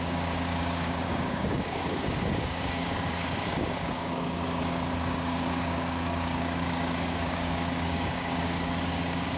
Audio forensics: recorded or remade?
remade